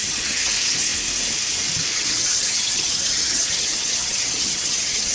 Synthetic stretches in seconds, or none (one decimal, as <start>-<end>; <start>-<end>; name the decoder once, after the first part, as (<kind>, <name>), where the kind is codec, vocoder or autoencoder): 0.0-0.5 (vocoder, HiFi-GAN); 1.9-5.1